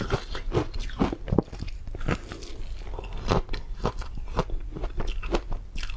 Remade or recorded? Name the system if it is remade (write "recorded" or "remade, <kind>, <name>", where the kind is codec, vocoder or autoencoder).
recorded